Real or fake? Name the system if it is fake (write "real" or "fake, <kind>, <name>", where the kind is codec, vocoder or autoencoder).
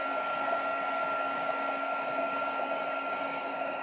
fake, codec, DAC